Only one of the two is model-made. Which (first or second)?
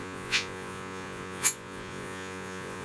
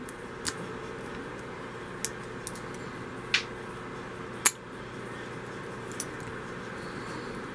first